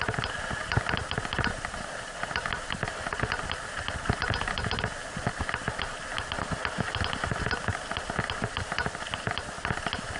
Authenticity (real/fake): real